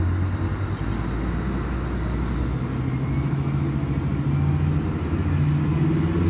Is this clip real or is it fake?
real